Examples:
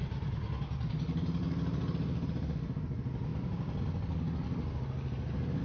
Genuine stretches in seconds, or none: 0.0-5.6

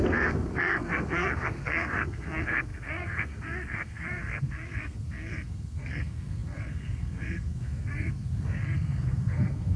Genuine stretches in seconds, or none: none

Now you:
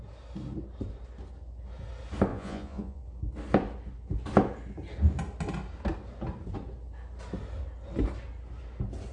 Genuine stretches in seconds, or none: 0.0-2.3; 3.0-9.1

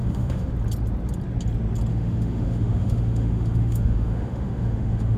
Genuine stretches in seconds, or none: 0.5-1.9

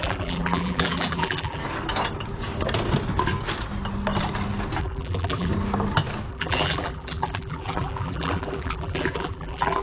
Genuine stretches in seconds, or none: 1.6-4.8; 5.5-6.3